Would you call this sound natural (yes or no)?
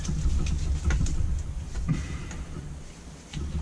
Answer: yes